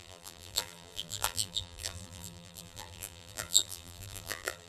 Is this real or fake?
fake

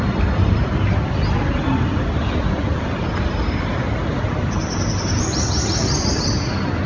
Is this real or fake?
fake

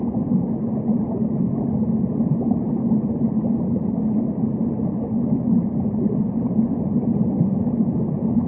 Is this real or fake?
real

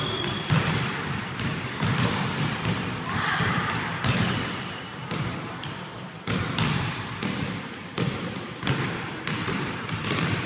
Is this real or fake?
fake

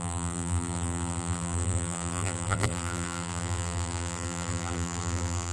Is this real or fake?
fake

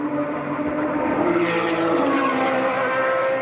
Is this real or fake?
fake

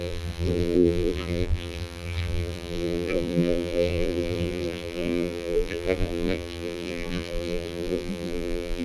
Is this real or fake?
fake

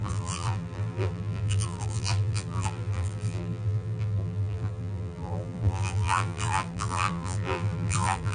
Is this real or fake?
fake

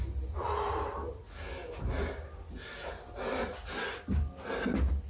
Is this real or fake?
real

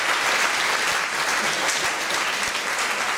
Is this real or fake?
real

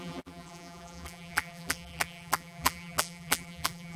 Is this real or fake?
fake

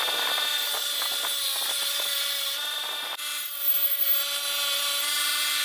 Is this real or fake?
real